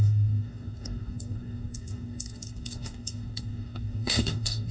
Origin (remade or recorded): remade